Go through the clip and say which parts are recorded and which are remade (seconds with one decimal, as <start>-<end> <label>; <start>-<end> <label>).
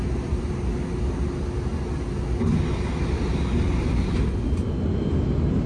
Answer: 0.0-5.7 recorded